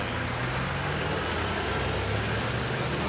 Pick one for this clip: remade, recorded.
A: recorded